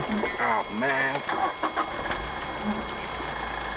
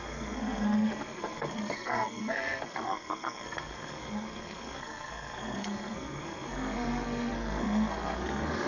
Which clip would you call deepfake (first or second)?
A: second